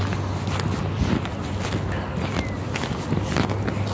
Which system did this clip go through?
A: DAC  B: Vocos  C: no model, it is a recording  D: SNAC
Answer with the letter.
C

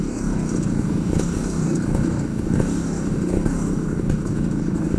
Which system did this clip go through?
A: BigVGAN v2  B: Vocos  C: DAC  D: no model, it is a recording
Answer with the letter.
C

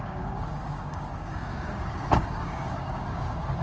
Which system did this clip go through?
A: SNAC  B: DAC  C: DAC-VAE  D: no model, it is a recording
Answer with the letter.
B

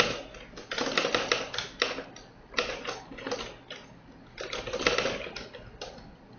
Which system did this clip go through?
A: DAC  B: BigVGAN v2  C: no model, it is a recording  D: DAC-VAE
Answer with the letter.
C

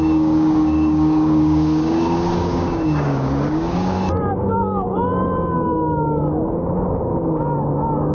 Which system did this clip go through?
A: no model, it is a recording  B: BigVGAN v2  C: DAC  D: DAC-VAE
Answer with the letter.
C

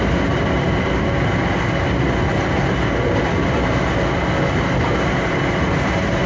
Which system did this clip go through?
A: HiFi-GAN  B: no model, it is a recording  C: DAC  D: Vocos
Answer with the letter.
B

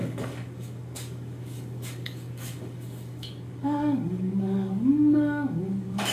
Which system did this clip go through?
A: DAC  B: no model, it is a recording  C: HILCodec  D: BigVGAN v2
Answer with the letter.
A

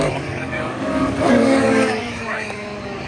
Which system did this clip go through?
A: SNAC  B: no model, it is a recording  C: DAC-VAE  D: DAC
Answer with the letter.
D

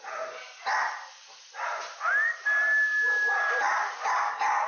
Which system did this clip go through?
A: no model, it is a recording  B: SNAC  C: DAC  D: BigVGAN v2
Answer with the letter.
A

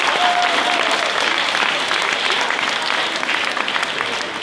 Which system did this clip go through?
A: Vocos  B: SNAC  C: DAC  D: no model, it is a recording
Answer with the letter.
D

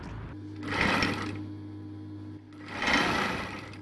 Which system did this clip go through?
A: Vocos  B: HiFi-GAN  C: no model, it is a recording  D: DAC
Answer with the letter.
C